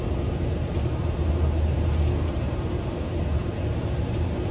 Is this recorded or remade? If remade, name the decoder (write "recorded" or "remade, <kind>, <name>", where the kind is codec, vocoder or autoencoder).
recorded